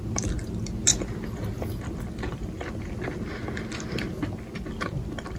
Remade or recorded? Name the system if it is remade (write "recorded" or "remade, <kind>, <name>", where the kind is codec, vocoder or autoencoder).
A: recorded